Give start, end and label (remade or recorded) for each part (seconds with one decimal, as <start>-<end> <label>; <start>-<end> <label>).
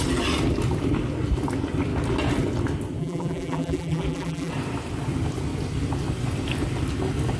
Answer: 0.0-3.0 recorded; 3.0-4.5 remade; 4.5-7.4 recorded